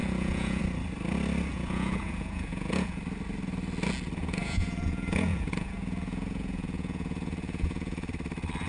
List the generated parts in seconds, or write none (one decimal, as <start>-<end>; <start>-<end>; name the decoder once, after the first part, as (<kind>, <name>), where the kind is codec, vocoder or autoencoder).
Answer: 0.0-0.6 (vocoder, Vocos); 1.5-3.0; 4.2-8.1